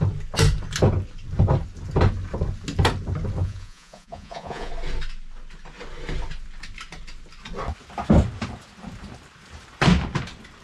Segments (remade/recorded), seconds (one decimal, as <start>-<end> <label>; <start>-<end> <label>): 0.0-3.4 recorded; 3.4-4.7 remade; 4.7-10.6 recorded